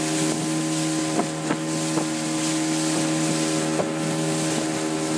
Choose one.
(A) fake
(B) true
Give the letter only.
B